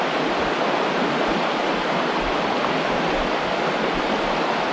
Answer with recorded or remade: recorded